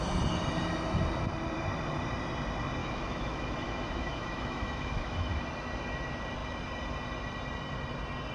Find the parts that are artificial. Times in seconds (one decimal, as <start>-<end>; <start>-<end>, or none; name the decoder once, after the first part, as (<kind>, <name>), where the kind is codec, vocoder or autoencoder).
2.8-5.4 (autoencoder, DAC-VAE)